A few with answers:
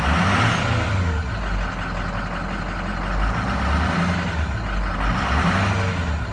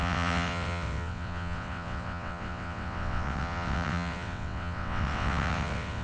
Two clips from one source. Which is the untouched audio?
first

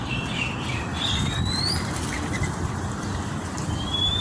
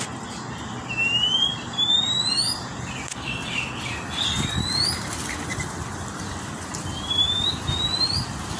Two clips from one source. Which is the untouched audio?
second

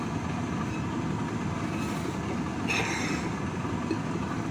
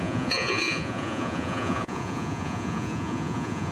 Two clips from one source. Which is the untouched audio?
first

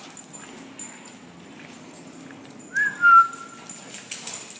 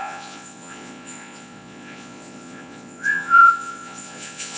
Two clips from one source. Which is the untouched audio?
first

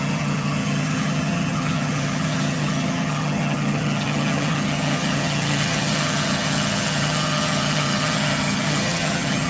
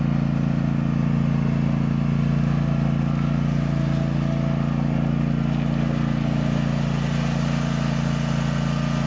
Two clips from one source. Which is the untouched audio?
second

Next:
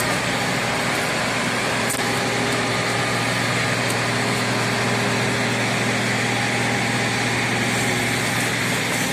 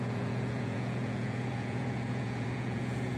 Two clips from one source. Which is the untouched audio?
first